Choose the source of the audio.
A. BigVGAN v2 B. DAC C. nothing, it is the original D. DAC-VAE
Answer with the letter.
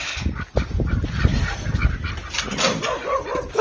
C